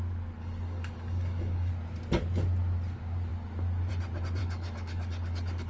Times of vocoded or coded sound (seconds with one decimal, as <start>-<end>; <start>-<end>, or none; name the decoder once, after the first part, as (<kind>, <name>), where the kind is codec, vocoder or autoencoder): 0.4-1.7 (codec, DAC); 4.4-5.7